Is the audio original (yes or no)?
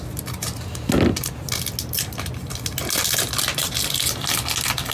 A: yes